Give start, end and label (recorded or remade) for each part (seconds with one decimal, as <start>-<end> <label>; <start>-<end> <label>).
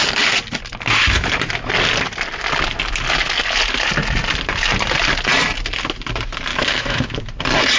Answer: 0.0-6.5 recorded; 6.5-7.2 remade; 7.2-7.8 recorded